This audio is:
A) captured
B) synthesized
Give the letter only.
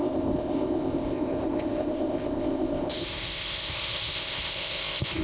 B